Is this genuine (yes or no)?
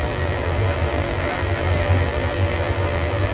no